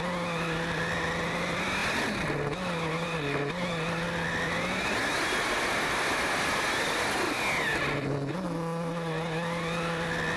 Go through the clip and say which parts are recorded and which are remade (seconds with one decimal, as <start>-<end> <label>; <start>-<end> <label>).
0.0-10.4 recorded